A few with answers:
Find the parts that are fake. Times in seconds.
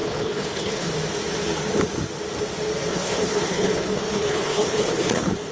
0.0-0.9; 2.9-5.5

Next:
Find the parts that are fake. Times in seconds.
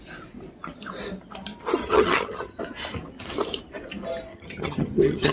1.8-2.6; 4.3-5.3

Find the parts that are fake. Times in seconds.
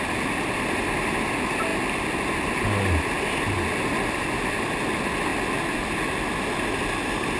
none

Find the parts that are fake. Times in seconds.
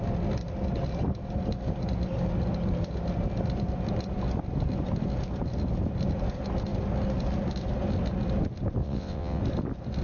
8.8-9.4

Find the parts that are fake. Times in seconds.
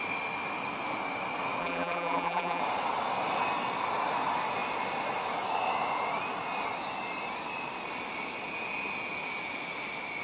1.6-2.6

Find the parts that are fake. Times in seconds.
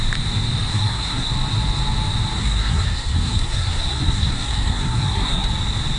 0.7-1.3; 2.4-5.5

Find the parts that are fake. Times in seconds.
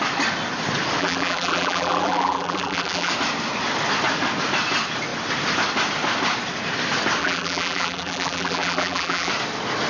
1.0-3.1; 7.2-9.3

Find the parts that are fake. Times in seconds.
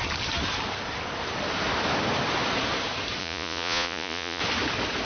3.2-4.4